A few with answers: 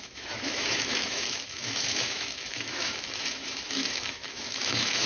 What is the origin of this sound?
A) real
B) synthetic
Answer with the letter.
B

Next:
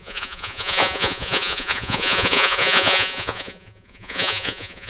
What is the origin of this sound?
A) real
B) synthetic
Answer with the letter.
B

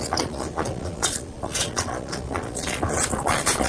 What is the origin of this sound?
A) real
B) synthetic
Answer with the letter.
B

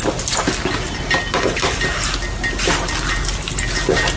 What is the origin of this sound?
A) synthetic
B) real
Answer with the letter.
B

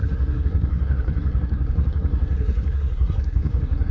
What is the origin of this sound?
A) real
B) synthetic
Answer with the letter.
B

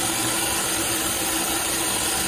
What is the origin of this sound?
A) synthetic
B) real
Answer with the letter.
B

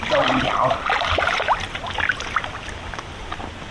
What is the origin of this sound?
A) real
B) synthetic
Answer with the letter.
A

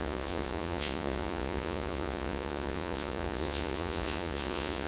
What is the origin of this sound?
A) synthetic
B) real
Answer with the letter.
A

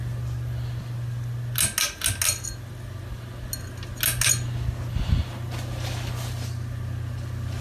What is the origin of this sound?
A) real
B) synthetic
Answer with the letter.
A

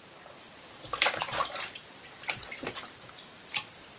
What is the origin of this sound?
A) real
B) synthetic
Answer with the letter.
B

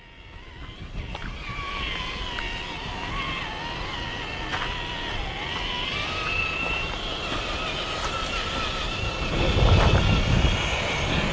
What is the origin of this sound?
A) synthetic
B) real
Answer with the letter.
B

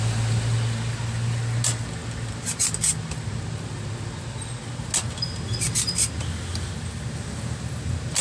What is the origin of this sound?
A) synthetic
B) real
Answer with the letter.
B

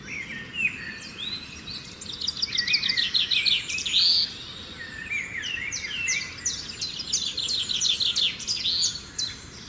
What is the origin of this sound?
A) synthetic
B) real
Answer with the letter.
B